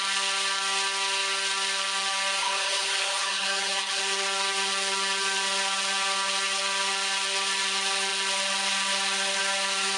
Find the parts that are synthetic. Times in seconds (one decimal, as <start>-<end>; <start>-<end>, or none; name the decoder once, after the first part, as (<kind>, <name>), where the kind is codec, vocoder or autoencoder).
2.4-4.0 (codec, HILCodec)